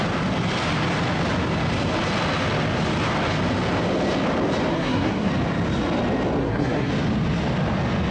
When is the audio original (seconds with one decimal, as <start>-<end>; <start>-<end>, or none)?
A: 0.0-4.7; 5.3-6.4; 6.9-8.1